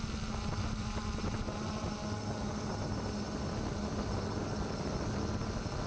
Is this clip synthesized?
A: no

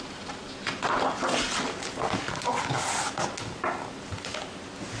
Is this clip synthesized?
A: no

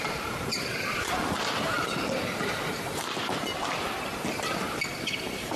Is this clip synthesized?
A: no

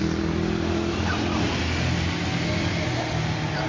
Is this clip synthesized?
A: no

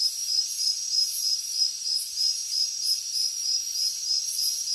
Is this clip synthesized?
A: yes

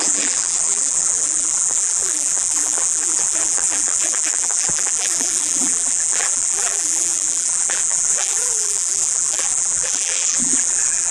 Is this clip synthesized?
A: yes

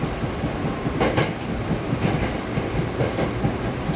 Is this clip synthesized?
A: yes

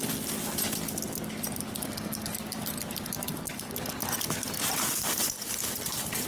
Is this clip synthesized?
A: no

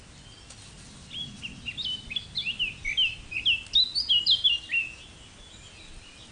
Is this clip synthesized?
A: no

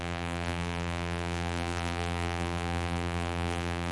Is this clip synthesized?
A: yes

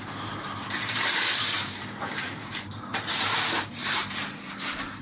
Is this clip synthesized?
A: yes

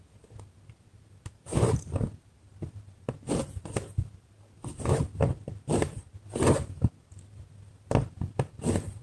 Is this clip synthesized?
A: no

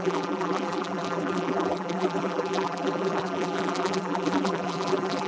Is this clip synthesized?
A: yes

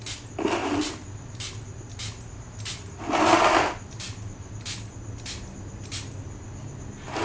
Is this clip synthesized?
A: no